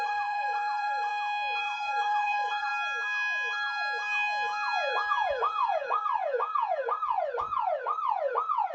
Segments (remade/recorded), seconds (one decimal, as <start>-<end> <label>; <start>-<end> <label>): 0.0-1.1 remade; 1.1-1.6 recorded; 1.6-2.7 remade; 2.7-5.3 recorded; 5.3-8.7 remade